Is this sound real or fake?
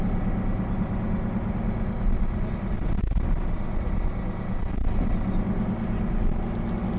real